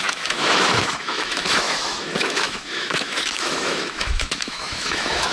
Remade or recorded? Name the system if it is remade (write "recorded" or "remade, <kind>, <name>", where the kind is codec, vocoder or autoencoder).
remade, autoencoder, DAC-VAE